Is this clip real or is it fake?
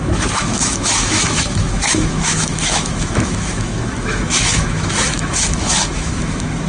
fake